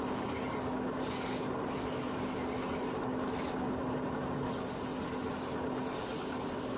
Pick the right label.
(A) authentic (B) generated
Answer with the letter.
A